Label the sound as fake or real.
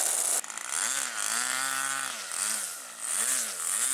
fake